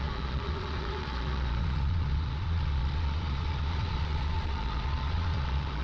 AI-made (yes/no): yes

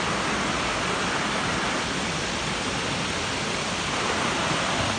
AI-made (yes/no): no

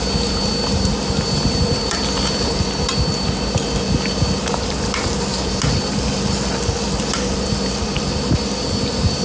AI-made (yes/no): no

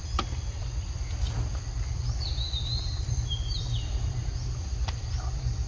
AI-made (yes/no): no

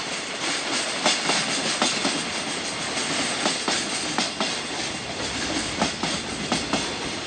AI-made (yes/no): no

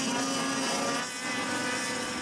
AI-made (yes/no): no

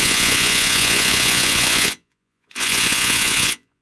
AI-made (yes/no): yes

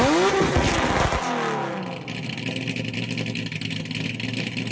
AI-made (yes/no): no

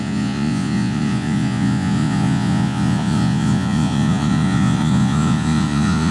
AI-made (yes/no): yes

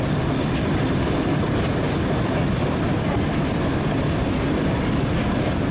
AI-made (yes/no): no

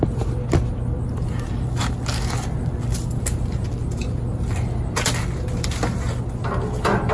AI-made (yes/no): no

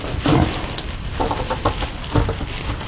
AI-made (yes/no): no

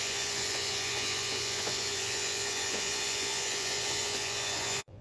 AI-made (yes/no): yes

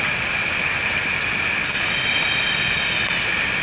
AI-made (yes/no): no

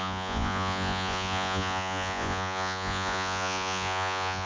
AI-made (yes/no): yes